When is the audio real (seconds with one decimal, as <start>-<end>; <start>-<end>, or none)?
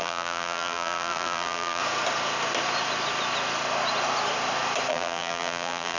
1.8-4.9